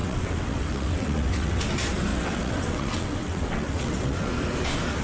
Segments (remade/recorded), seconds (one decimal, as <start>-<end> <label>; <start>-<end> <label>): 0.0-1.6 remade; 1.6-2.1 recorded; 2.1-4.3 remade; 4.3-5.0 recorded